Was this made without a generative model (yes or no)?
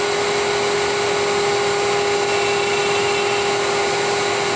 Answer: yes